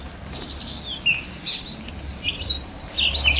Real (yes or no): yes